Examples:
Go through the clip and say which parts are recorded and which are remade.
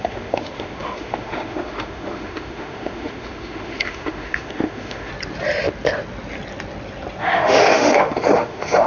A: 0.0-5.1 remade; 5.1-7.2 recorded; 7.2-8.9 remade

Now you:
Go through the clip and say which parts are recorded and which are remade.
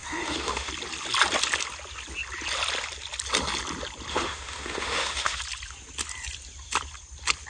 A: 0.0-0.7 remade; 0.7-4.1 recorded; 4.1-5.4 remade; 5.4-7.5 recorded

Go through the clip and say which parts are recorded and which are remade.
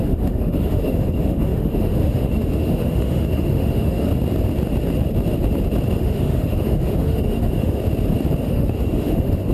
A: 0.0-4.1 remade; 4.1-6.0 recorded; 6.0-7.8 remade; 7.8-8.4 recorded; 8.4-9.5 remade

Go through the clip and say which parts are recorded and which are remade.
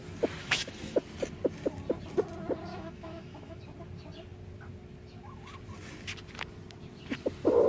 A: 0.0-0.4 recorded; 0.4-1.0 remade; 1.0-2.7 recorded; 2.7-3.6 remade; 3.6-7.7 recorded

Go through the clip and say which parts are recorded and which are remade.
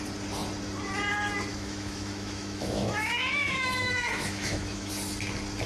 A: 0.0-1.5 recorded; 1.5-4.9 remade; 4.9-5.7 recorded